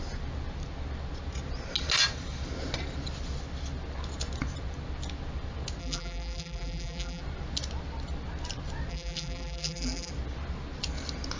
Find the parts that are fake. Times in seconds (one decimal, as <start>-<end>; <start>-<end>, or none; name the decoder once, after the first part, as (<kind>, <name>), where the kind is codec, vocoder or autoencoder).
5.8-7.2 (vocoder, BigVGAN v2); 8.9-10.1